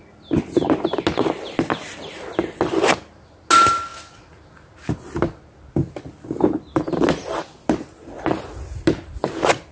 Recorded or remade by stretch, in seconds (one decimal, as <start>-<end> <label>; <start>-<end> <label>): 0.0-9.7 recorded